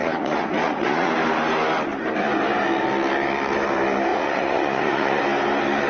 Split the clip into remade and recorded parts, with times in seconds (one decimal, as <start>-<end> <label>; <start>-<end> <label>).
0.0-1.1 remade; 1.1-4.1 recorded; 4.1-5.2 remade; 5.2-5.9 recorded